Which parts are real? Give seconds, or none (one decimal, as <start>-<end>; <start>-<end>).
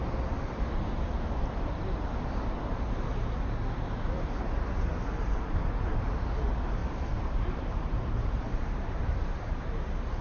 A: 0.0-6.8; 9.0-10.2